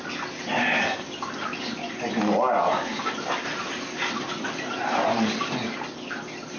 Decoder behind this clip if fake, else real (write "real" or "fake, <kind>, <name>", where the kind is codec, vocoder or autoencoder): real